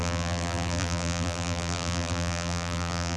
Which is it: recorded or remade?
remade